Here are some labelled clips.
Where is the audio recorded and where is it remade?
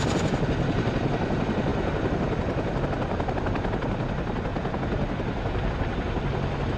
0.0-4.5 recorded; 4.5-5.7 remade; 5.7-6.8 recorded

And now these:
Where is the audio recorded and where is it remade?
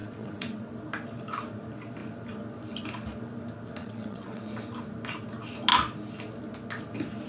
0.0-0.7 remade; 0.7-3.8 recorded; 3.8-4.5 remade; 4.5-7.3 recorded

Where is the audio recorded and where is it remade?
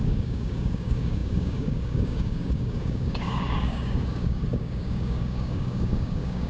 0.0-6.5 remade